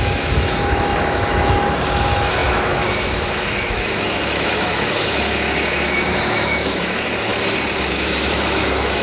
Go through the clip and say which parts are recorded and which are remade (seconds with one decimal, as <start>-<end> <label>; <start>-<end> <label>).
0.0-7.3 remade; 7.3-7.9 recorded; 7.9-9.0 remade

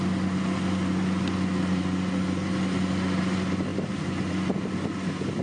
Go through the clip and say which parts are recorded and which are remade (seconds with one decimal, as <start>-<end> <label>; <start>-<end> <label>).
0.0-5.4 recorded

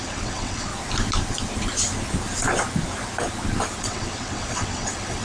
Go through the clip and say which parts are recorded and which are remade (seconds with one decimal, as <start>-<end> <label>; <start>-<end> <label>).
0.0-0.7 remade; 0.7-3.8 recorded; 3.8-5.2 remade

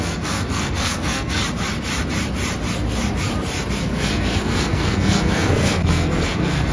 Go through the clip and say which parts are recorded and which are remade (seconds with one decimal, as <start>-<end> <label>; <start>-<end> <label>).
0.0-1.4 remade; 1.4-3.8 recorded; 3.8-6.7 remade

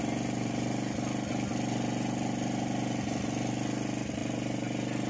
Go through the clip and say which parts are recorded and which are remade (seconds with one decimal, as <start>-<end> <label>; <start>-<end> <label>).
0.0-5.1 recorded

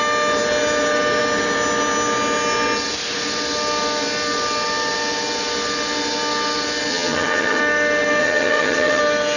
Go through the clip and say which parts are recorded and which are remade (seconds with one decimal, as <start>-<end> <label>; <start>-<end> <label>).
0.0-6.9 recorded; 6.9-7.6 remade; 7.6-8.2 recorded; 8.2-9.0 remade; 9.0-9.4 recorded

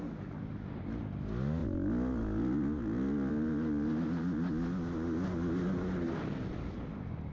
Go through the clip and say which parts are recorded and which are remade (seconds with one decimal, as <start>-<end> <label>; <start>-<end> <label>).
0.0-7.3 recorded

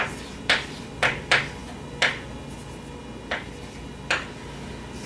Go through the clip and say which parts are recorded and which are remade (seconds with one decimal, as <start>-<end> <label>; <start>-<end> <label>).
0.0-5.1 recorded